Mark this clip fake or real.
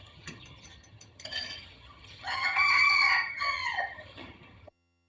fake